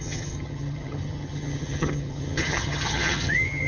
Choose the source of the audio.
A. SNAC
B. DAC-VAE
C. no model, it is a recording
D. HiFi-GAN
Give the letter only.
D